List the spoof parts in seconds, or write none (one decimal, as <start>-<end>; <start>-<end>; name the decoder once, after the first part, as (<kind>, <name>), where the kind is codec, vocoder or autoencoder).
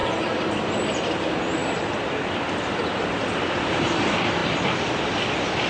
0.0-0.7 (vocoder, BigVGAN v2); 1.6-4.0; 4.4-5.0